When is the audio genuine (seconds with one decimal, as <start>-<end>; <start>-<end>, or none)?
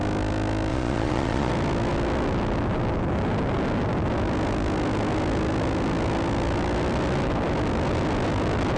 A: 0.0-0.7; 1.5-8.8